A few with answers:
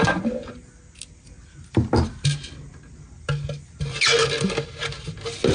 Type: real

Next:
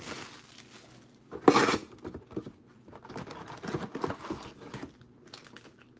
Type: real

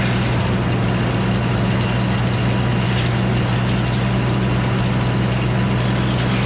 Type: real